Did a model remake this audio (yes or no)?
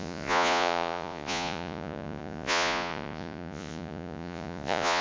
yes